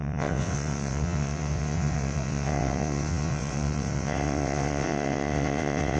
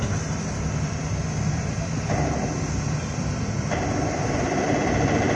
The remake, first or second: first